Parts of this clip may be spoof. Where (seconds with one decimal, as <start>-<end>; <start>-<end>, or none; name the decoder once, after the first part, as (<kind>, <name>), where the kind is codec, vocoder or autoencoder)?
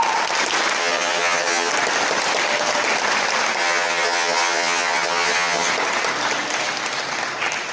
0.8-1.7 (vocoder, HiFi-GAN); 3.6-5.7